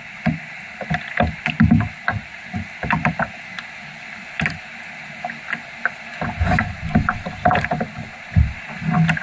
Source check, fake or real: real